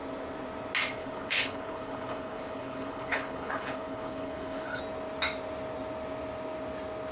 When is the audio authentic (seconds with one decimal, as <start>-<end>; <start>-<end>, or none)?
0.0-1.0; 4.8-7.1